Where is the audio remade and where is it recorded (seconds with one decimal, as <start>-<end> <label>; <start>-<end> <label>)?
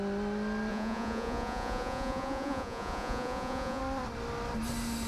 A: 0.0-0.7 recorded; 0.7-3.8 remade; 3.8-5.1 recorded